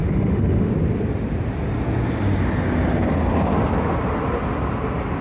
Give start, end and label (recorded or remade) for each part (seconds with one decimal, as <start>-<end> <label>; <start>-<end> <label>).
0.0-0.7 remade; 0.7-5.2 recorded